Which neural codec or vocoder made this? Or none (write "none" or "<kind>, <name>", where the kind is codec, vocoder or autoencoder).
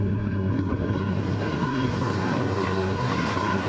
codec, SNAC